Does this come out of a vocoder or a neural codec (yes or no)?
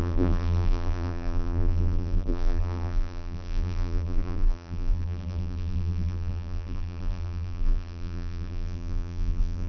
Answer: yes